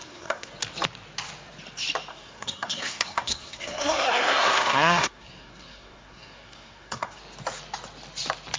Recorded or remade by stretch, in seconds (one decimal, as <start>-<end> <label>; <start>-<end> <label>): 0.0-0.5 remade; 0.5-2.1 recorded; 2.1-7.2 remade; 7.2-8.6 recorded